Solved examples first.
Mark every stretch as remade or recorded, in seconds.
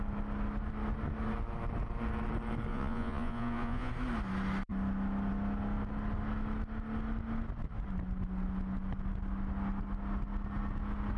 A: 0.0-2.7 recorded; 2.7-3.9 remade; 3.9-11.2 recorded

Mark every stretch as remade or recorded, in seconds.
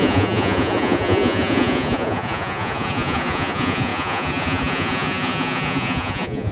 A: 0.0-6.5 remade